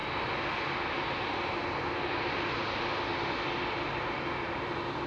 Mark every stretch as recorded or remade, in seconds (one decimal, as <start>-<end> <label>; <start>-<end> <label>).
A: 0.0-5.1 recorded